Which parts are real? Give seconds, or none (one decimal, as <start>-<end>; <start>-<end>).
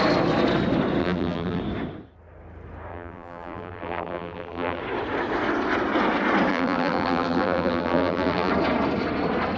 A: 0.0-1.0; 1.6-2.9; 4.8-6.5; 8.5-9.6